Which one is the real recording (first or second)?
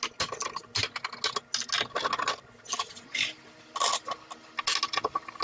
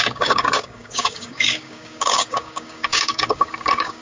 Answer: first